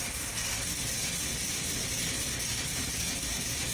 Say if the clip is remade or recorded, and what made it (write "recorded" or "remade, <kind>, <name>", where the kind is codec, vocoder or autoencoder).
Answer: recorded